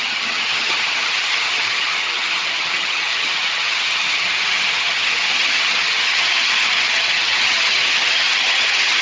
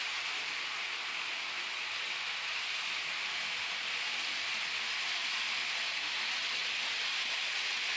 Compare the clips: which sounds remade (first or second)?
first